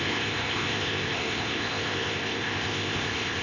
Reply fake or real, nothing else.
fake